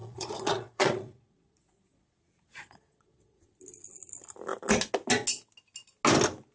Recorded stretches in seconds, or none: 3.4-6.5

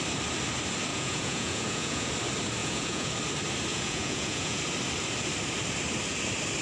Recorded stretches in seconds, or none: 0.0-0.9; 2.1-2.6; 3.1-3.7; 4.6-6.6

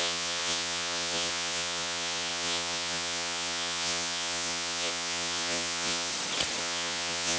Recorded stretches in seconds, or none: 6.1-6.6

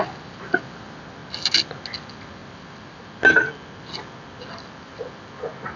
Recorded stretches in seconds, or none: 0.0-5.8